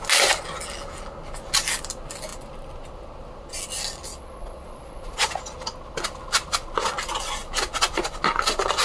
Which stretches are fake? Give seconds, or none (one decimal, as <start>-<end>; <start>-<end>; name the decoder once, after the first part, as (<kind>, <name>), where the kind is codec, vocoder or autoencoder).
4.1-5.3 (vocoder, Vocos)